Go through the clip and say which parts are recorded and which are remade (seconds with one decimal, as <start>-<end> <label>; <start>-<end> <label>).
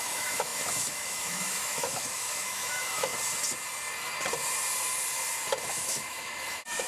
0.0-3.1 remade; 3.1-5.7 recorded; 5.7-6.9 remade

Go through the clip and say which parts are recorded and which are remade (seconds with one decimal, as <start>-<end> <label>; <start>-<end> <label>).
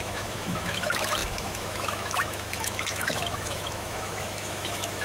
0.0-5.0 remade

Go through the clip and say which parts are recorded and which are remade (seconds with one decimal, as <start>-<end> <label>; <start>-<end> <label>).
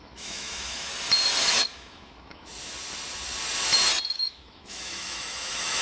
0.0-0.9 remade; 0.9-1.4 recorded; 1.4-2.5 remade; 2.5-4.1 recorded; 4.1-5.8 remade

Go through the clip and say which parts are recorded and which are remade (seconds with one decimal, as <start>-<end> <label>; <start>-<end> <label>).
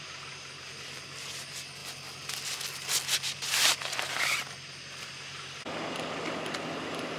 0.0-7.2 recorded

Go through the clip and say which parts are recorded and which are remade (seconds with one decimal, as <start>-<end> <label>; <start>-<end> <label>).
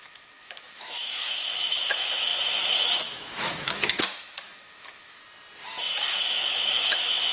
0.0-5.2 remade; 5.2-6.2 recorded; 6.2-7.3 remade